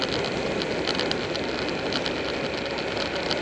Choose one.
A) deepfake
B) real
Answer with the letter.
B